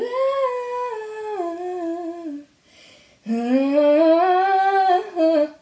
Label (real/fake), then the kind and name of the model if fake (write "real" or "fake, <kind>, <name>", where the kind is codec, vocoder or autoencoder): real